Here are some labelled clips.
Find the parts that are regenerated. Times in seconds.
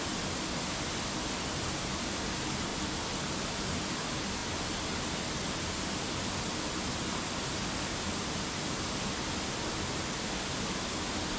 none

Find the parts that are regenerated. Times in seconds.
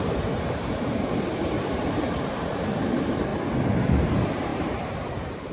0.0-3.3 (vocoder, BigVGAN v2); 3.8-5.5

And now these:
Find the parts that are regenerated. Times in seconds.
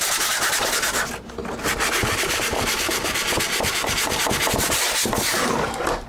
2.0-4.2 (vocoder, BigVGAN v2)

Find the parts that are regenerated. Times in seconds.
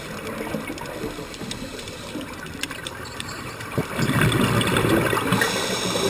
1.7-3.8 (vocoder, BigVGAN v2)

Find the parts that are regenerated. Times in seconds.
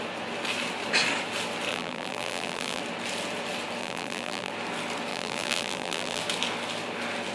1.7-2.8 (vocoder, BigVGAN v2); 3.8-4.5; 5.1-6.2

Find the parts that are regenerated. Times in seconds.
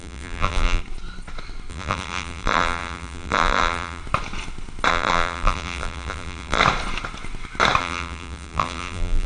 0.0-0.8 (vocoder, BigVGAN v2); 1.7-4.0; 4.9-6.6; 7.8-9.3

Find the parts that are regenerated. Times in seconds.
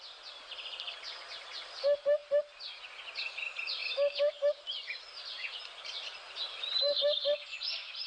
3.8-7.0 (vocoder, BigVGAN v2)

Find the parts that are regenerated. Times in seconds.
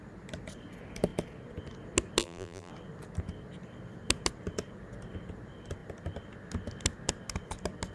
2.2-2.7 (vocoder, BigVGAN v2)